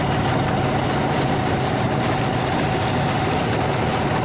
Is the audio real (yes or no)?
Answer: yes